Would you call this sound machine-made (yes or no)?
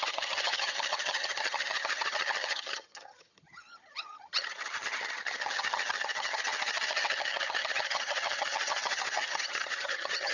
yes